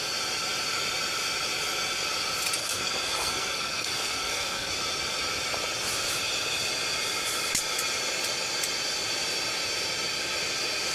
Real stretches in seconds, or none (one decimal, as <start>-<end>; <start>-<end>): 0.0-2.6; 4.7-10.9